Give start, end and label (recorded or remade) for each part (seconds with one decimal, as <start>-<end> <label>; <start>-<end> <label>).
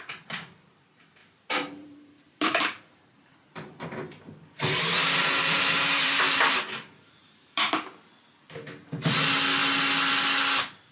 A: 0.0-1.2 recorded; 1.2-6.2 remade; 6.2-7.2 recorded; 7.2-8.1 remade; 8.1-10.9 recorded